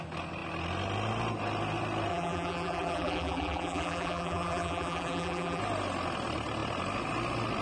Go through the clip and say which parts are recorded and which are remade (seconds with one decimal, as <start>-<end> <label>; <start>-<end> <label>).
0.0-2.1 recorded; 2.1-5.6 remade; 5.6-7.6 recorded